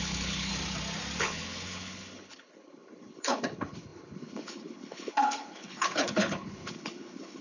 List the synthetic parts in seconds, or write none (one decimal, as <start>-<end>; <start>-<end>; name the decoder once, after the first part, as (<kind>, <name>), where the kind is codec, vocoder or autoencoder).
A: 0.0-0.5 (codec, HILCodec); 1.2-7.4